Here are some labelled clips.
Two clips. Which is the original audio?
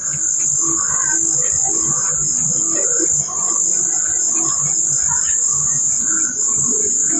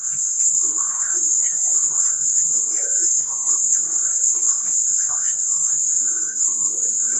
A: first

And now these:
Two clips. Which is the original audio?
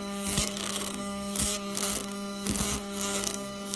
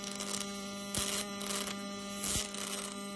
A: second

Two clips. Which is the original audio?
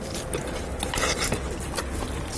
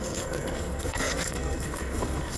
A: first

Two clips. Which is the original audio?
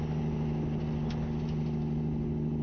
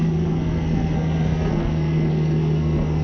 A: first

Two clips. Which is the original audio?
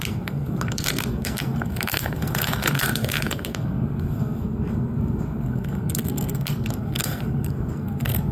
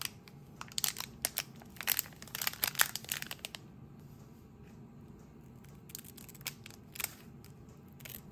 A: second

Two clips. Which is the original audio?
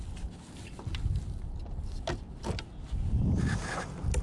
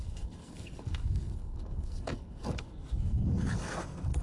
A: first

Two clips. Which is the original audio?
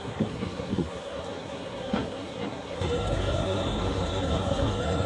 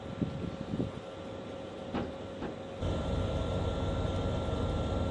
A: second